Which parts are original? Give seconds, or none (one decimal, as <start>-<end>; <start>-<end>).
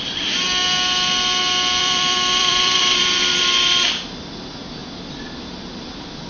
0.0-1.8; 3.4-6.3